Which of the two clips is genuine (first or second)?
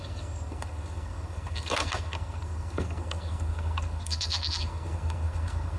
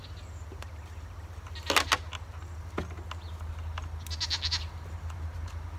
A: second